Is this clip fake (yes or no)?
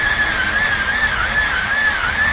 no